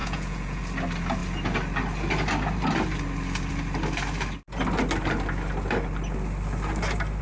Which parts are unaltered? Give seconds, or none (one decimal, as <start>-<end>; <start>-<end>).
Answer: 0.6-7.2